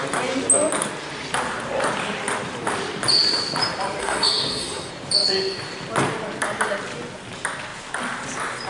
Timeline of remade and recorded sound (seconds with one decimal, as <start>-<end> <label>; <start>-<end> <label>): 0.0-4.0 recorded; 4.0-4.9 remade; 4.9-8.7 recorded